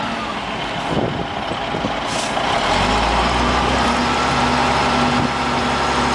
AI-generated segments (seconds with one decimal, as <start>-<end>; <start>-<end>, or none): none